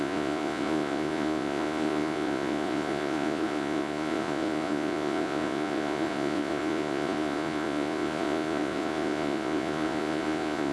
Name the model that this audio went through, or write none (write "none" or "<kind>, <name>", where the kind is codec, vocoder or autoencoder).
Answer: vocoder, Vocos